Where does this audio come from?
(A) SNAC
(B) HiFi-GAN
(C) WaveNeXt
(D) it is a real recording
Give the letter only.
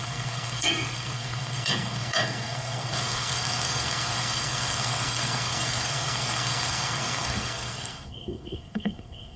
A